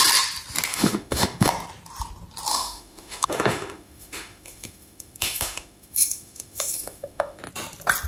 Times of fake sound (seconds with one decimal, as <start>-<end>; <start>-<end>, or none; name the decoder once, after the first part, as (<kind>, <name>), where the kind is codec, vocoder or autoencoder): 0.7-1.5 (autoencoder, DAC-VAE); 2.5-7.4